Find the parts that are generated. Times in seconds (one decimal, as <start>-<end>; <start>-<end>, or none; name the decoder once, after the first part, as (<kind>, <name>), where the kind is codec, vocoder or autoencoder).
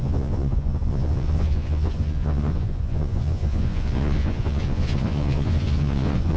0.0-6.4 (vocoder, Vocos)